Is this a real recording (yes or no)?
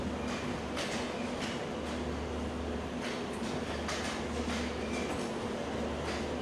yes